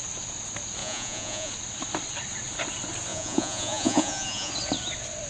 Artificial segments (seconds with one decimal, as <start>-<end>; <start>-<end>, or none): 0.8-1.5; 3.1-4.5